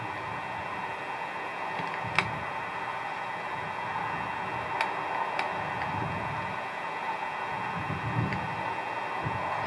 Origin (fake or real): real